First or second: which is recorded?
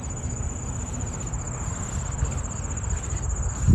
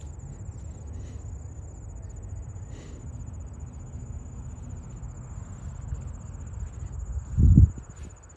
second